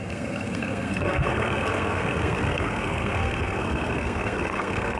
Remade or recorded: remade